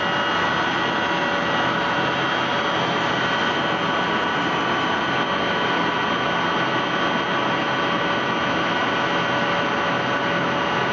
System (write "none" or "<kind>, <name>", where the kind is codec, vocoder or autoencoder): none